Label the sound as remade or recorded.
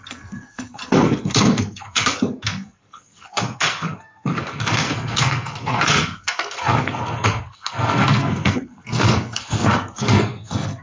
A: remade